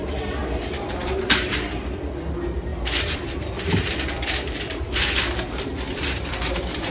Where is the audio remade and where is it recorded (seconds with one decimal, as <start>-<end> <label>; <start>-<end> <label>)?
0.0-0.4 recorded; 0.4-2.0 remade; 2.0-2.7 recorded; 2.7-6.9 remade